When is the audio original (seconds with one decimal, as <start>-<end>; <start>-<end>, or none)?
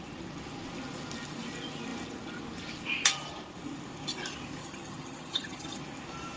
0.0-4.6; 5.8-6.4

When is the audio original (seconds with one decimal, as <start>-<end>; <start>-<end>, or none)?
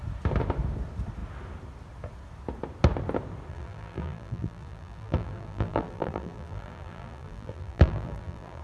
0.0-3.5